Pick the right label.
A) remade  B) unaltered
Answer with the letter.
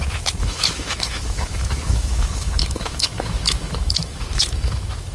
A